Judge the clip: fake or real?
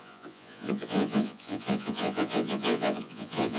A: fake